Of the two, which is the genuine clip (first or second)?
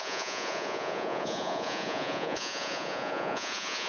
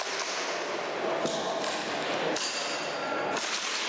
second